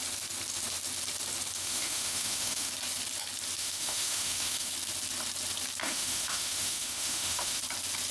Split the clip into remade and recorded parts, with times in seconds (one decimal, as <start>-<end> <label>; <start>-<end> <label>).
0.0-1.6 recorded; 1.6-2.7 remade; 2.7-3.6 recorded; 3.6-4.7 remade; 4.7-5.8 recorded; 5.8-7.6 remade; 7.6-8.1 recorded